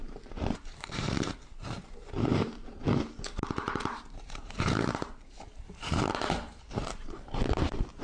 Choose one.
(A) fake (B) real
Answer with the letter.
A